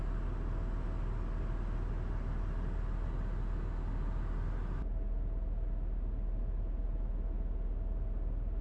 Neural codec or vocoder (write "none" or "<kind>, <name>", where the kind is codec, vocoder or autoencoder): none